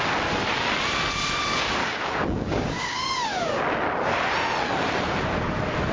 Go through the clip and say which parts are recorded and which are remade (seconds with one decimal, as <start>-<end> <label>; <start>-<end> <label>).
0.0-1.8 recorded; 1.8-3.6 remade; 3.6-5.9 recorded